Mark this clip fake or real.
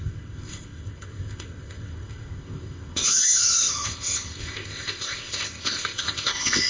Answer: fake